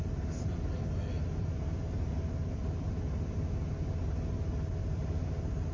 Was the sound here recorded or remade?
recorded